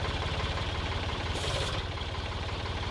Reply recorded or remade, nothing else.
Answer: remade